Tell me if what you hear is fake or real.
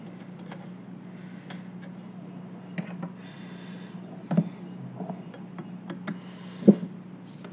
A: real